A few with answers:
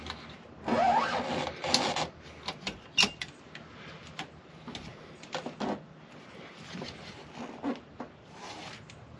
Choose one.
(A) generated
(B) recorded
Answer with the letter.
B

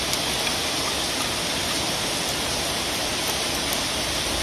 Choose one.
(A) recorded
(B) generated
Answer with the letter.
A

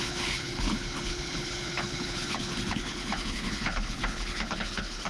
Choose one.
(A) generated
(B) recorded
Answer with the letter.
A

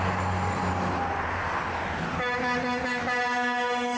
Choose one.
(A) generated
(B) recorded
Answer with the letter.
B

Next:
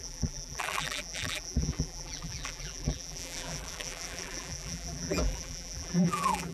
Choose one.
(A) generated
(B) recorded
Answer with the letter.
A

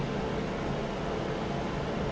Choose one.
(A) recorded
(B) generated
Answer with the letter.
A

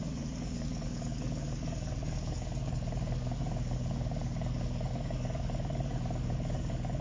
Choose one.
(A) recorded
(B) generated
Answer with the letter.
B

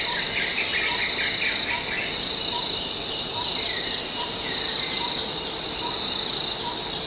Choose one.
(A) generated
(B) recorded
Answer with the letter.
B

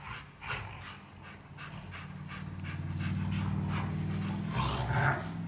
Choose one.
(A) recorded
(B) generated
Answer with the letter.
A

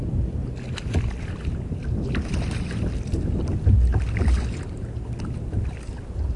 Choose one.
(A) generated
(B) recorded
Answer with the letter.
B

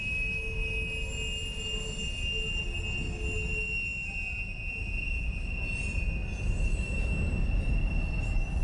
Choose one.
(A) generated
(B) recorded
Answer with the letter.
B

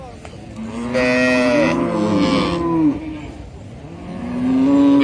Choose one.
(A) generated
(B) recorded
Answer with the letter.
B